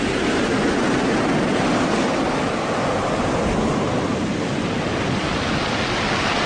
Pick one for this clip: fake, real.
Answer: real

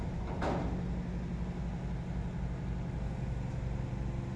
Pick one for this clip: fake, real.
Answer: real